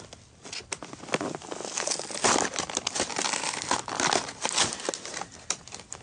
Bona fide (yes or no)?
yes